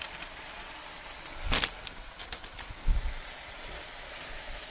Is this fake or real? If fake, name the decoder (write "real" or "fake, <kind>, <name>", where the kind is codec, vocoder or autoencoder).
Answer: real